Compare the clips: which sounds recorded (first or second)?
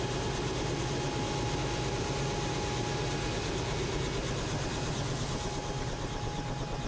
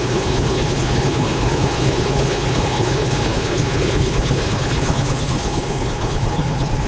first